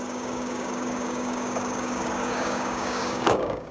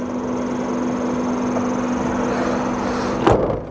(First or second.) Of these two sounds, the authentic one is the second